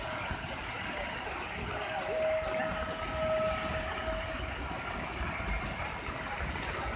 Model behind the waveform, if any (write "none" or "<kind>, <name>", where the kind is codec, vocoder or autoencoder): none